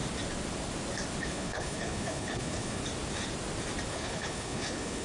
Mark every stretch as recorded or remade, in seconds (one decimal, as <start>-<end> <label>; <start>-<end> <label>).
0.0-1.2 recorded; 1.2-2.8 remade; 2.8-3.9 recorded; 3.9-5.0 remade